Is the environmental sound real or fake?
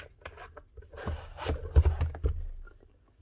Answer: real